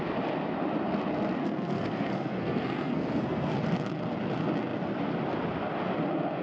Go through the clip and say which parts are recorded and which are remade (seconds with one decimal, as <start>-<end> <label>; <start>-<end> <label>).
0.0-1.4 recorded; 1.4-3.5 remade; 3.5-6.4 recorded